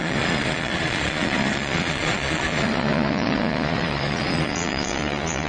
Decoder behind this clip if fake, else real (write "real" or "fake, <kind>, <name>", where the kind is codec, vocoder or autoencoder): fake, vocoder, Vocos